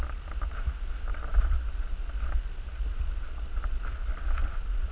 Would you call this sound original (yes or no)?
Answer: yes